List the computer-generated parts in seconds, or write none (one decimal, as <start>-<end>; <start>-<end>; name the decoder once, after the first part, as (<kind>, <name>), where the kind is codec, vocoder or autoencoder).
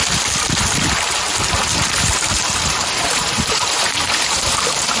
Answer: 1.7-5.0 (vocoder, BigVGAN v2)